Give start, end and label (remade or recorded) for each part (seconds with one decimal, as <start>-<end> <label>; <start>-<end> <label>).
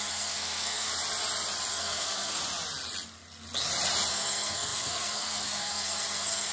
0.0-0.9 remade; 0.9-1.7 recorded; 1.7-2.4 remade; 2.4-4.1 recorded; 4.1-6.5 remade